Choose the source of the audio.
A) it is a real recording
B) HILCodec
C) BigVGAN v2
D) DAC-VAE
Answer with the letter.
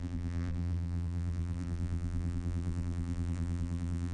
C